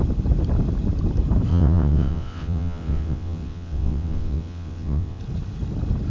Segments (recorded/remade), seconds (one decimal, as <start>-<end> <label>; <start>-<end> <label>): 0.0-1.5 recorded; 1.5-5.2 remade; 5.2-6.1 recorded

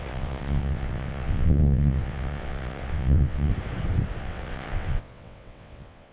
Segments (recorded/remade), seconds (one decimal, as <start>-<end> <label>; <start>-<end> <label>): 0.0-3.5 remade; 3.5-4.2 recorded; 4.2-6.1 remade

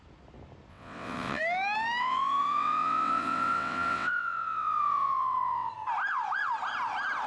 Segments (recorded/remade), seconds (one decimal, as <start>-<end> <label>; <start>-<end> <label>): 0.0-0.7 recorded; 0.7-1.4 remade; 1.4-2.0 recorded; 2.0-5.7 remade; 5.7-7.3 recorded